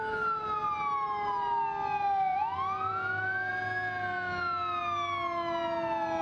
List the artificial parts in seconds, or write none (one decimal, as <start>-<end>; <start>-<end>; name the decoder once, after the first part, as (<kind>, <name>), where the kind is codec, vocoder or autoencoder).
none

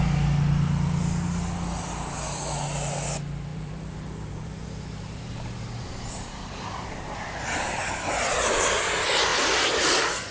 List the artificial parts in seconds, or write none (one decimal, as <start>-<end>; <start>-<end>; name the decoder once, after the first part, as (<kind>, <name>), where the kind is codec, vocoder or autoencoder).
3.5-7.9 (vocoder, BigVGAN v2)

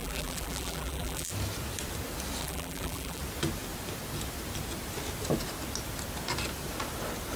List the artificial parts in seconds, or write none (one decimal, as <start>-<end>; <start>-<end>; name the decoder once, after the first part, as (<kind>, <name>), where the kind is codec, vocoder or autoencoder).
0.0-1.3 (vocoder, BigVGAN v2); 2.4-3.2

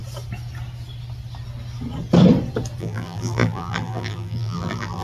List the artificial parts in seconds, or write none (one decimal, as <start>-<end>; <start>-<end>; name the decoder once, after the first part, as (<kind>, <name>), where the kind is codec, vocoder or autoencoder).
2.8-5.0 (vocoder, BigVGAN v2)

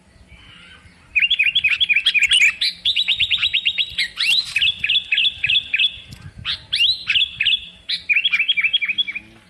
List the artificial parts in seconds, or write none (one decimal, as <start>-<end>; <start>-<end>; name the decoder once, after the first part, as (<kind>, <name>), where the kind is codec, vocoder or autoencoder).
1.1-2.3 (vocoder, BigVGAN v2); 3.1-4.4; 5.2-5.8

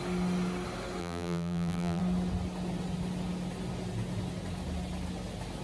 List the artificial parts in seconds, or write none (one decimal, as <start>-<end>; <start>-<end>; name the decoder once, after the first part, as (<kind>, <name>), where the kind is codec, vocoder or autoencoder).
1.0-2.0 (vocoder, BigVGAN v2)

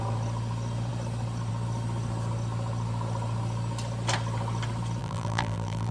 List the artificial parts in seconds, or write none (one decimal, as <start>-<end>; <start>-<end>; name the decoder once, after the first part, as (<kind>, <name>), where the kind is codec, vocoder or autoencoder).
5.0-5.9 (vocoder, BigVGAN v2)

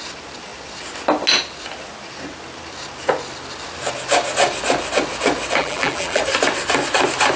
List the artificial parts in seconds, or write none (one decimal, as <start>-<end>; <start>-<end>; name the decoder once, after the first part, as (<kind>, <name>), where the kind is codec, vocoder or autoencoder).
5.6-6.2 (vocoder, BigVGAN v2)